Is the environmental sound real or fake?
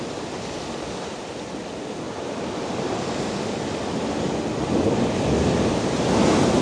real